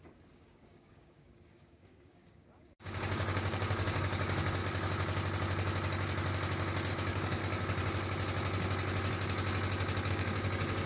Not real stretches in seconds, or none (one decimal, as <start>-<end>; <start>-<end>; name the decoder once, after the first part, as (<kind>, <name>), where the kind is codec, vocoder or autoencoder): 0.0-4.6 (codec, DAC); 6.9-7.4; 10.1-10.9